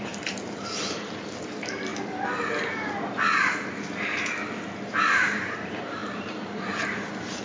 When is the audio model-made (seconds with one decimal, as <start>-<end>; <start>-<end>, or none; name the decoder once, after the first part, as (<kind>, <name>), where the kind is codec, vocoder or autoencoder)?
0.0-1.9 (vocoder, BigVGAN v2); 5.0-7.4